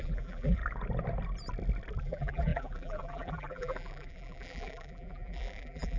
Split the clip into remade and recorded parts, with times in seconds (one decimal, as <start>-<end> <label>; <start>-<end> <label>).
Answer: 0.0-0.6 remade; 0.6-2.0 recorded; 2.0-6.0 remade